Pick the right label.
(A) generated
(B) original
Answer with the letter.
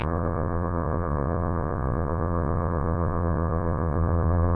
A